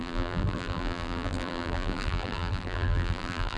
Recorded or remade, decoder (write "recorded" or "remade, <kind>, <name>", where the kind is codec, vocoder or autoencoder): remade, vocoder, BigVGAN v2